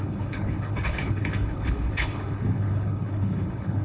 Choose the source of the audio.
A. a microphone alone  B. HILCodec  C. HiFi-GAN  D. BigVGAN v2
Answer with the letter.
B